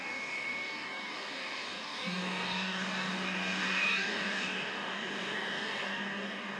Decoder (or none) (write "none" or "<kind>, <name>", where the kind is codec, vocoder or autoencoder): codec, DAC